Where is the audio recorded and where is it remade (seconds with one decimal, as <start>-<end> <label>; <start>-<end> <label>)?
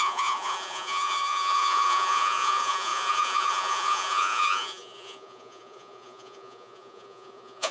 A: 0.0-7.7 remade